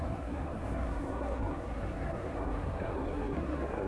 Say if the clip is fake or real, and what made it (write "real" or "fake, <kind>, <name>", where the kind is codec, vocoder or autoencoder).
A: fake, codec, SNAC